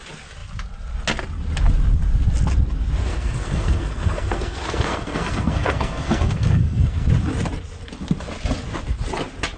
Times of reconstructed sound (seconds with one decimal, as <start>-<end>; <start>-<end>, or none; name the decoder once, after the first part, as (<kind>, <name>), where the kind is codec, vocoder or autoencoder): 3.1-7.1 (codec, SNAC)